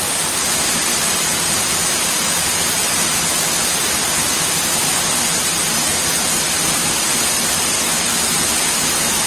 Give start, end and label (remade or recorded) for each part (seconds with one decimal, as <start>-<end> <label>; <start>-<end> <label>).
0.0-9.3 recorded